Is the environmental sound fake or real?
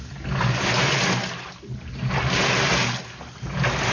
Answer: real